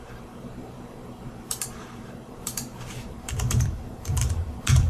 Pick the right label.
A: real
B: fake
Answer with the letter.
B